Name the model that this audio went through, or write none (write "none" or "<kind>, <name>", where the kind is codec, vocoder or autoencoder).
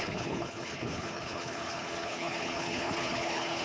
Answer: codec, HILCodec